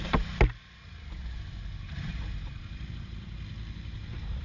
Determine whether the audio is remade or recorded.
recorded